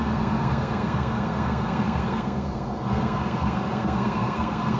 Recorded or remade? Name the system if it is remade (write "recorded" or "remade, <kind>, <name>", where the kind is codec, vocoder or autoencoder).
remade, codec, SNAC